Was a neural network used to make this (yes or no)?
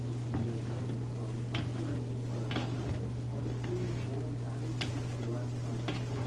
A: no